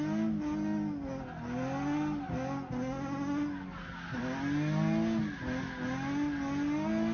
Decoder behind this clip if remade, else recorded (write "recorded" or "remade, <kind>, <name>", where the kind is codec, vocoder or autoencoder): recorded